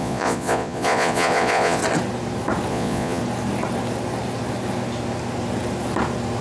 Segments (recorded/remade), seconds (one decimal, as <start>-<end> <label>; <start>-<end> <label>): 0.0-1.8 remade; 1.8-2.7 recorded; 2.7-3.2 remade; 3.2-6.4 recorded